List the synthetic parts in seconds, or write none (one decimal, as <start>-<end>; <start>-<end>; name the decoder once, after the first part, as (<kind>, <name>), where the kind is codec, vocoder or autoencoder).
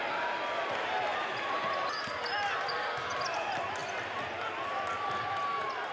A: none